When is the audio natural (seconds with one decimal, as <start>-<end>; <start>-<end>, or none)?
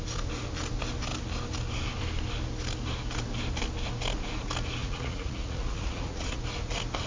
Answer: 0.0-4.8; 6.4-7.1